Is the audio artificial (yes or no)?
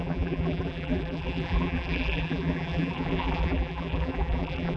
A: yes